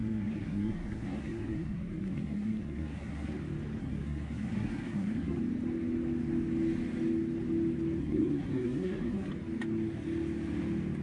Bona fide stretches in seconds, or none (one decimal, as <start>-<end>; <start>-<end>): 3.3-3.8; 5.4-8.0; 9.3-11.0